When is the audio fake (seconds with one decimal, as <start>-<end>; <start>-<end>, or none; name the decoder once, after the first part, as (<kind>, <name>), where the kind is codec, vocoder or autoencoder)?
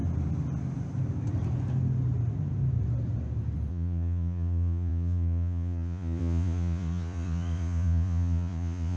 3.7-9.0 (vocoder, Vocos)